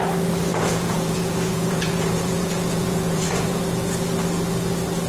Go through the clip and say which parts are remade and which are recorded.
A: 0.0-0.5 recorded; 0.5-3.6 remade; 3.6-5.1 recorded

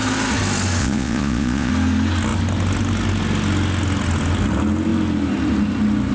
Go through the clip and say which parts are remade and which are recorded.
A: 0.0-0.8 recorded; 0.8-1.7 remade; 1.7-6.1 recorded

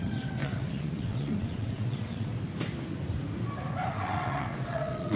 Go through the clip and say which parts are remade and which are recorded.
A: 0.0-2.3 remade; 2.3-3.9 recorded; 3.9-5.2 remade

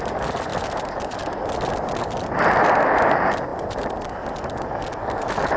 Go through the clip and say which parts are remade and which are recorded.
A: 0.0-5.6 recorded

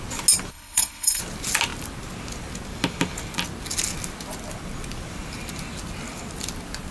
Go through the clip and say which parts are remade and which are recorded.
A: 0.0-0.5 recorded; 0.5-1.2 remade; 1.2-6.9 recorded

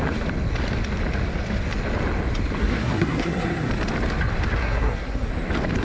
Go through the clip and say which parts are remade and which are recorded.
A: 0.0-2.6 recorded; 2.6-3.7 remade; 3.7-4.6 recorded; 4.6-5.3 remade; 5.3-5.8 recorded

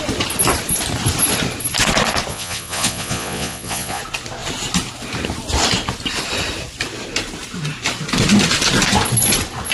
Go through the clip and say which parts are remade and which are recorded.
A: 0.0-2.3 recorded; 2.3-4.0 remade; 4.0-9.7 recorded